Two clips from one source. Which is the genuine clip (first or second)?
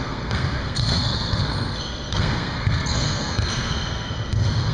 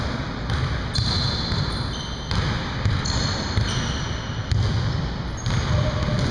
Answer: second